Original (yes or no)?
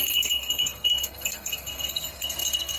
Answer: no